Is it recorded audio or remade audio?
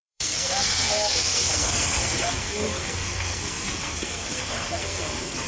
remade